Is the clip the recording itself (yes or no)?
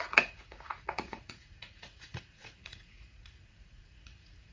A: no